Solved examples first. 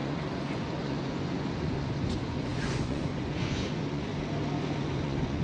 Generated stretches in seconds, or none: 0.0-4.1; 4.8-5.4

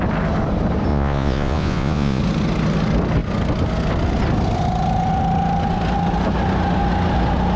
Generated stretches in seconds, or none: 0.9-2.2

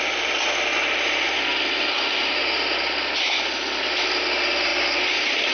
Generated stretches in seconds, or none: none

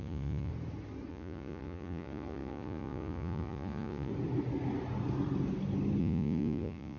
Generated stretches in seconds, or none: 0.0-0.5; 1.1-4.1; 6.0-7.0

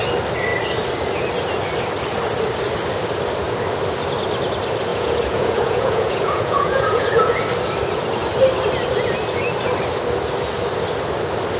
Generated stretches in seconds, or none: 4.9-7.4